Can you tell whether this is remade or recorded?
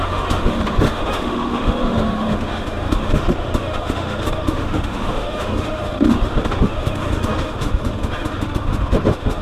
remade